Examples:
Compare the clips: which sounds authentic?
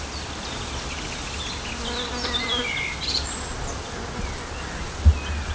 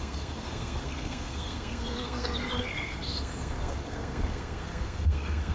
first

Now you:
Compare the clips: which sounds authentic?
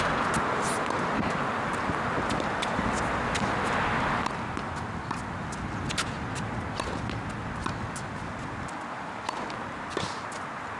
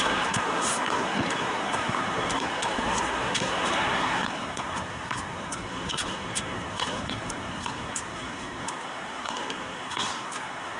first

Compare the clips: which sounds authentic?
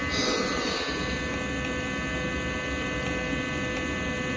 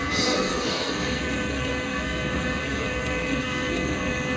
first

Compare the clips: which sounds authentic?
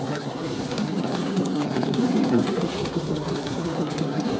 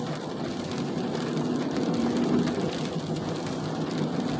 second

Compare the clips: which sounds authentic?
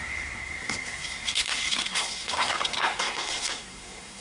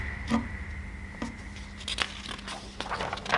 second